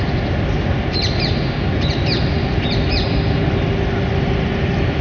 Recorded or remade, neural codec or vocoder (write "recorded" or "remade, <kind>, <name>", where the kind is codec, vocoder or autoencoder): recorded